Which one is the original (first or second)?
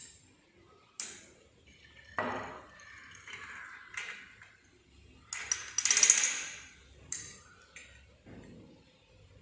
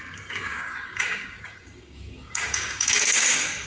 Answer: first